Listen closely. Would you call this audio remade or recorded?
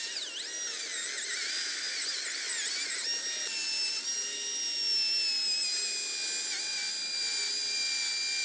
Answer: recorded